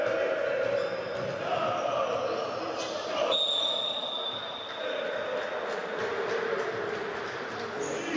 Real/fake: real